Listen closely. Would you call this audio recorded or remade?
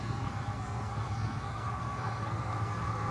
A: remade